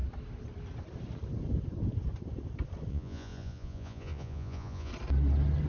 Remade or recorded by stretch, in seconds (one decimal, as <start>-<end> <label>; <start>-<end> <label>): 0.0-2.9 recorded; 2.9-4.9 remade; 4.9-5.7 recorded